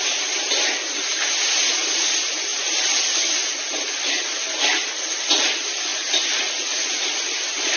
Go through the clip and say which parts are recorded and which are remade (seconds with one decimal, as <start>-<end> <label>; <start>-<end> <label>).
0.0-5.9 recorded; 5.9-6.9 remade; 6.9-7.8 recorded